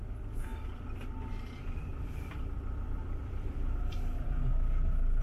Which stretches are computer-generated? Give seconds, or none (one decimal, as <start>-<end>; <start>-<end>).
0.5-1.3; 1.9-4.5

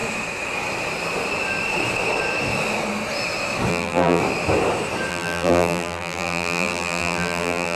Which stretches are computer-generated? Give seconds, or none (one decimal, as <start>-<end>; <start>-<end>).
3.7-4.2; 5.1-7.8

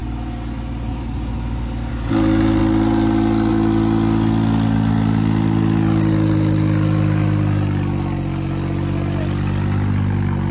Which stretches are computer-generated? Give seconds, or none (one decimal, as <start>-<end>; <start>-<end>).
none

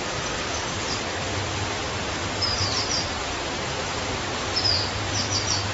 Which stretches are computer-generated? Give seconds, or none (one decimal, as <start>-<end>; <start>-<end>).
1.8-5.2

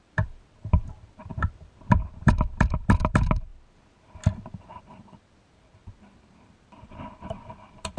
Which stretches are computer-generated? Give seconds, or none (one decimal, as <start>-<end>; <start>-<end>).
0.0-3.5; 4.6-8.0

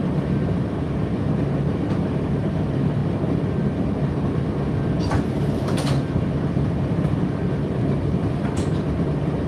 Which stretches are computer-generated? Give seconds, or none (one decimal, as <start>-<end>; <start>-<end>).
1.9-3.0; 4.1-9.5